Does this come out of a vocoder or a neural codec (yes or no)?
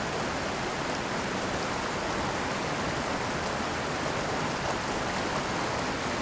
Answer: no